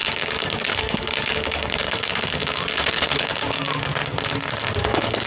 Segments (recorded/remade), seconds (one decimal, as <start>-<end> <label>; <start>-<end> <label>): 0.0-3.9 remade; 3.9-4.8 recorded; 4.8-5.3 remade